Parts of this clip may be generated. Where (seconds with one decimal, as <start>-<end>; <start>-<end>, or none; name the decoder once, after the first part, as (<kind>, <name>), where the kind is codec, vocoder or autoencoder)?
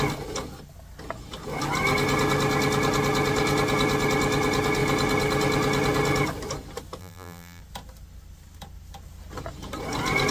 7.0-7.6 (vocoder, BigVGAN v2)